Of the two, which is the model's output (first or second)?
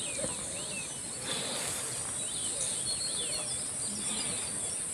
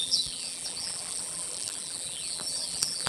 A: second